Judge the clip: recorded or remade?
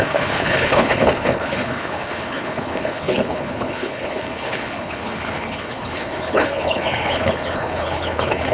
remade